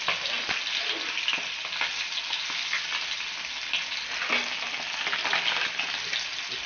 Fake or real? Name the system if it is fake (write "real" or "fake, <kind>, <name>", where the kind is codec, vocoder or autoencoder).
real